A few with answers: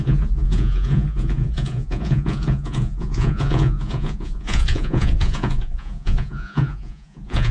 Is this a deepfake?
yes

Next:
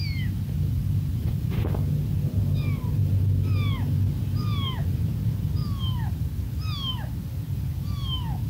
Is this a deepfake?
no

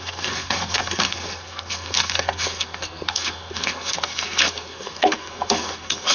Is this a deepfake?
yes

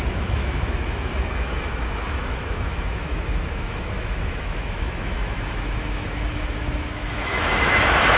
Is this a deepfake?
yes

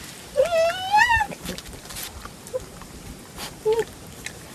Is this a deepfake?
no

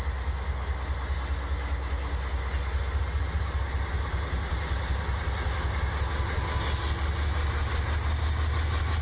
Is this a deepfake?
no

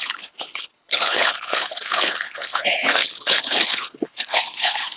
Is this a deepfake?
yes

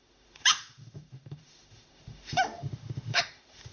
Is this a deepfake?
yes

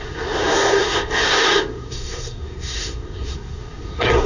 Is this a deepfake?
yes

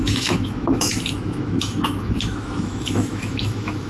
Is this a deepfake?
yes